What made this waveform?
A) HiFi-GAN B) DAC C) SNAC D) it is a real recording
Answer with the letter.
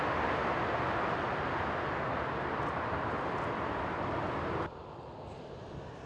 D